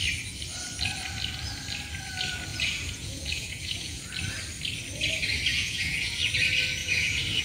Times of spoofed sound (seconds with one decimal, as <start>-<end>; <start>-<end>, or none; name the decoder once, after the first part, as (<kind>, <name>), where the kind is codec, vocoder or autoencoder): 2.5-4.1 (vocoder, Vocos); 5.5-6.2; 6.8-7.4